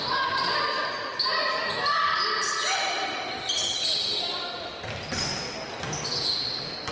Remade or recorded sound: recorded